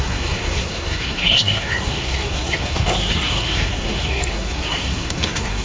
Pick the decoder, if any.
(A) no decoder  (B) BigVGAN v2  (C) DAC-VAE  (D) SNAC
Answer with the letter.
D